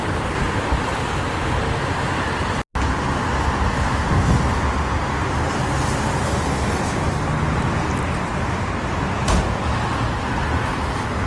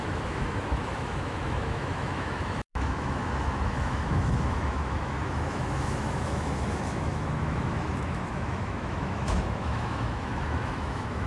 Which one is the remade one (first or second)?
second